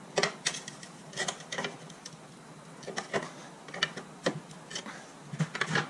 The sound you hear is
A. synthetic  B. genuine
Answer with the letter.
B